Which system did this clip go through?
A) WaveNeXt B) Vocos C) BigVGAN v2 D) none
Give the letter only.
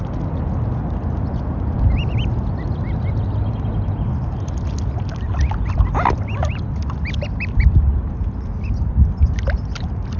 D